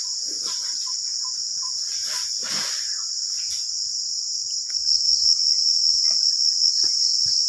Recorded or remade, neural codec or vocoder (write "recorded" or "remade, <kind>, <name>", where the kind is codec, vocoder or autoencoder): recorded